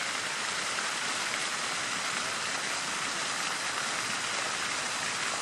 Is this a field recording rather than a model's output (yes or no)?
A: yes